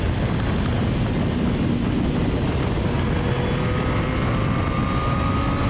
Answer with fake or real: real